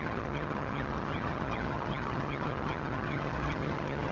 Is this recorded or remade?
remade